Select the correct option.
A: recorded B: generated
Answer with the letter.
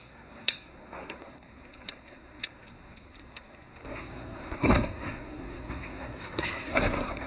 B